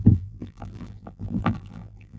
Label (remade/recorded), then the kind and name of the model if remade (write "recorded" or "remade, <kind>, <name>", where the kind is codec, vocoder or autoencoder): remade, vocoder, BigVGAN v2